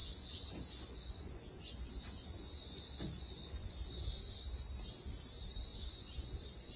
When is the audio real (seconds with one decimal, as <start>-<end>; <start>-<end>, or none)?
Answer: 4.1-5.7